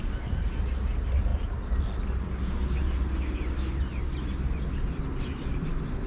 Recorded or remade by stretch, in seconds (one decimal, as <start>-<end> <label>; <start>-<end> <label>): 0.0-6.1 recorded